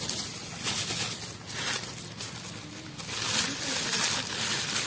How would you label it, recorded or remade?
recorded